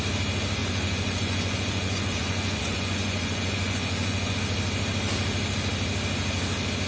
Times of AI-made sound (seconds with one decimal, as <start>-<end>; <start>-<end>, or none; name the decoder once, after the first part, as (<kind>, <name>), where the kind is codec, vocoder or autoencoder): 0.6-4.4 (vocoder, Vocos)